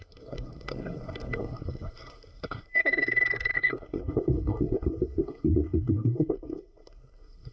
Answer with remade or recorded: remade